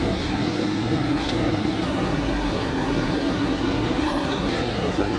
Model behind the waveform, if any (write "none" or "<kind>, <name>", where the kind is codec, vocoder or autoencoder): codec, SNAC